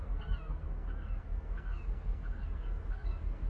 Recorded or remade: remade